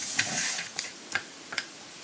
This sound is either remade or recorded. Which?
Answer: remade